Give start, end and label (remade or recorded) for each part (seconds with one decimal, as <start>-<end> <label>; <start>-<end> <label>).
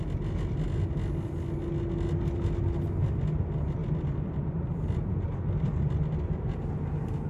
0.0-3.8 recorded; 3.8-5.1 remade; 5.1-7.3 recorded